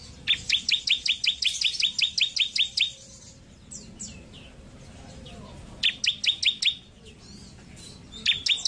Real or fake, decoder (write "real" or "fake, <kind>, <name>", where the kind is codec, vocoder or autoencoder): real